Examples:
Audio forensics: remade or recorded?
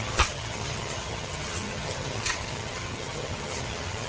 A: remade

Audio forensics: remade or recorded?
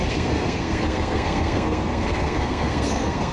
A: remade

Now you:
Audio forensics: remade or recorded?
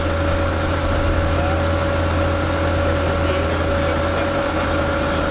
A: recorded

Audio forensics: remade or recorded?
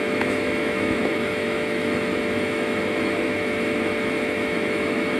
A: remade